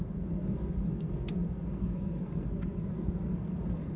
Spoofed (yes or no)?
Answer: yes